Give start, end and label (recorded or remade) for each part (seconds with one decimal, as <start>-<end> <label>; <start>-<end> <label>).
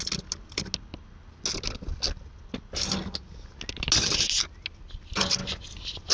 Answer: 0.0-6.1 recorded